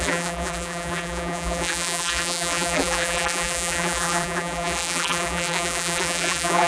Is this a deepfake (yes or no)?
yes